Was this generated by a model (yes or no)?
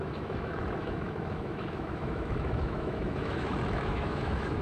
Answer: yes